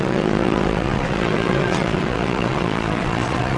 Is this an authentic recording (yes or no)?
no